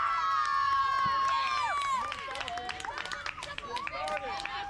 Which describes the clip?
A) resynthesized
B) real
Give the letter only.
B